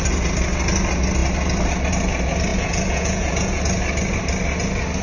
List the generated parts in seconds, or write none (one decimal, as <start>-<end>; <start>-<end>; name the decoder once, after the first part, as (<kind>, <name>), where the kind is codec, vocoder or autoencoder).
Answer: 2.5-3.6 (vocoder, Vocos)